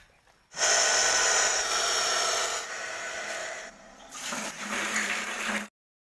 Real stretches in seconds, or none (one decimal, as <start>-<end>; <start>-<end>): 0.0-1.0; 2.1-3.4; 5.5-6.1